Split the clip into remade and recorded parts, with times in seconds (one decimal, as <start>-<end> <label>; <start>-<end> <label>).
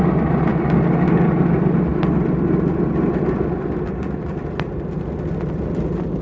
0.0-6.2 recorded